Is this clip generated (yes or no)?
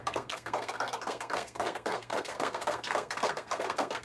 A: yes